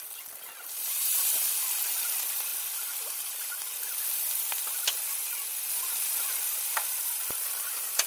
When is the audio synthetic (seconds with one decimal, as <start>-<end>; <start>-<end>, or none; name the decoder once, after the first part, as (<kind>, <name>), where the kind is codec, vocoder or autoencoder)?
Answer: 2.5-3.6 (vocoder, BigVGAN v2)